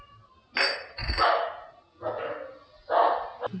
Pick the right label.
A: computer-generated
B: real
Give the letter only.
B